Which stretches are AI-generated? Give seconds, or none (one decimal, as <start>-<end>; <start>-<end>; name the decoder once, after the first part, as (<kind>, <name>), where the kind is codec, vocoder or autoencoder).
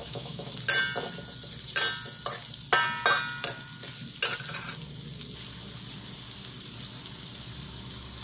0.0-0.5 (autoencoder, DAC-VAE)